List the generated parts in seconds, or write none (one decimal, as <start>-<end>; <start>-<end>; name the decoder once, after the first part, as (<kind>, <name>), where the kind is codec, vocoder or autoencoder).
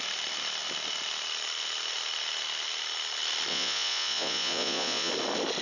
3.5-5.1 (vocoder, Vocos)